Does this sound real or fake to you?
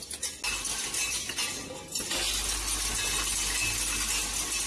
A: real